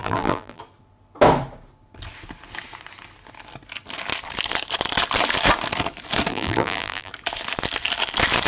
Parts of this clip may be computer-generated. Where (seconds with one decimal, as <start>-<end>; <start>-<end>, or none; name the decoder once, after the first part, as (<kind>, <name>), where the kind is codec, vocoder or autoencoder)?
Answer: 0.0-0.6 (vocoder, BigVGAN v2); 6.3-7.1